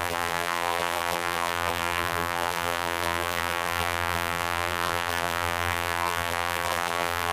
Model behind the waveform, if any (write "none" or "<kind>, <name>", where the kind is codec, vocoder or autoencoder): vocoder, BigVGAN v2